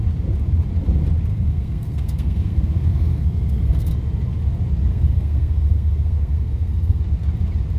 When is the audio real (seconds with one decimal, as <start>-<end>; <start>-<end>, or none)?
0.0-1.3; 3.9-4.9; 7.0-7.8